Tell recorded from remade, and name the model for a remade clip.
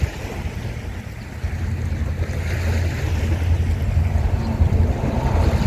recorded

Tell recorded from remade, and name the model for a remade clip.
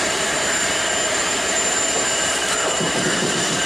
remade, vocoder, BigVGAN v2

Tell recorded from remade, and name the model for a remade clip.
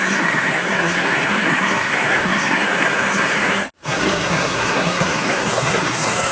remade, codec, SNAC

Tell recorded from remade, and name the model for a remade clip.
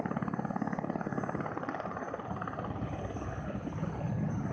recorded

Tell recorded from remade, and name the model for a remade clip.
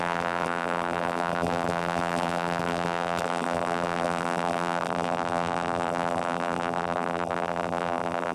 remade, vocoder, BigVGAN v2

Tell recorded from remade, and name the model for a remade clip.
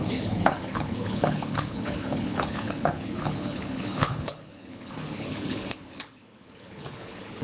remade, codec, HILCodec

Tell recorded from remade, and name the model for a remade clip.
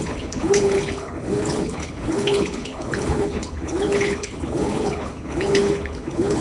remade, codec, HILCodec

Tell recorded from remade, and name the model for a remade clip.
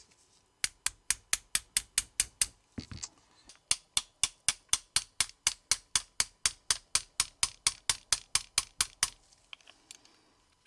recorded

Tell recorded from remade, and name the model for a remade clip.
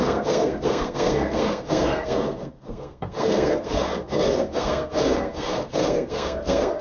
remade, codec, SNAC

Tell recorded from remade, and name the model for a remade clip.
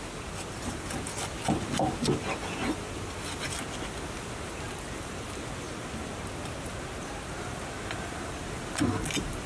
recorded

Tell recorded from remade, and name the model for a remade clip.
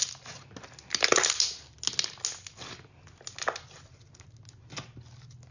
recorded